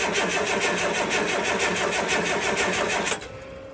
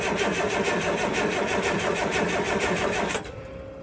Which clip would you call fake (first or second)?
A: second